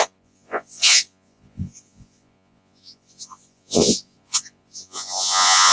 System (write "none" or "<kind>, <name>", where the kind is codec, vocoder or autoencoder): vocoder, Vocos